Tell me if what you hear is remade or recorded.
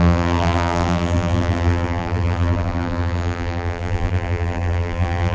remade